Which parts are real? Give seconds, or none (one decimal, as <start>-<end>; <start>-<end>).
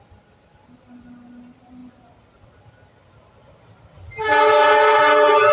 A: 0.0-5.5